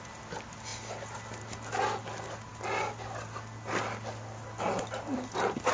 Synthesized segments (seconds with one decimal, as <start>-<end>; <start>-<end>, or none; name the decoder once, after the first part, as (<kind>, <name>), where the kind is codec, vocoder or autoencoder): none